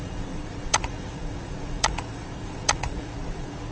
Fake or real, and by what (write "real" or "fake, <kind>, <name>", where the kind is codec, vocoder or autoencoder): fake, vocoder, Vocos